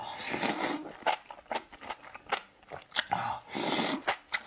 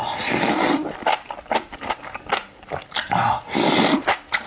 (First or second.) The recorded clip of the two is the first